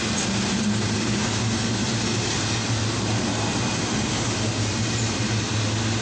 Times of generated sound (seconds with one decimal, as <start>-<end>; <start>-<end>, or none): none